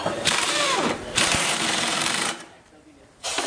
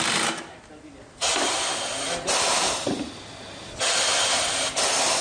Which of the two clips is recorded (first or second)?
second